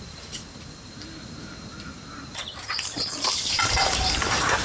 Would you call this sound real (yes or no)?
no